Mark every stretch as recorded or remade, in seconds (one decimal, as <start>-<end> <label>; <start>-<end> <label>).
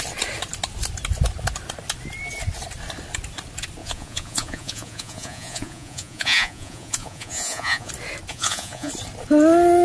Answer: 0.0-3.8 recorded; 3.8-7.9 remade; 7.9-8.3 recorded; 8.3-8.9 remade; 8.9-9.8 recorded